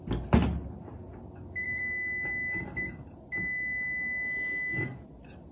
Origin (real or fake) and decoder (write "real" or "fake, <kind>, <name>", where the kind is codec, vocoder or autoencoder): real